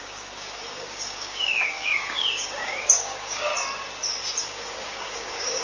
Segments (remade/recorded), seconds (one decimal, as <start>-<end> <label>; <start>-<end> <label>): 0.0-3.5 remade; 3.5-4.4 recorded; 4.4-5.6 remade